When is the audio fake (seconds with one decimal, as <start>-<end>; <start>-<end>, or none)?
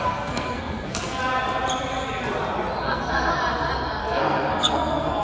0.0-1.2; 2.8-3.3; 4.0-5.2